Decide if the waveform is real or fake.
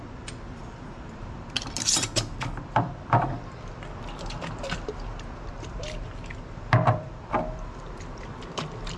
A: fake